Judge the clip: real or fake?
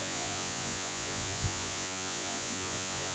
fake